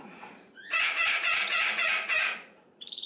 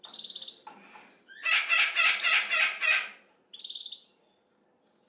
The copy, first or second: first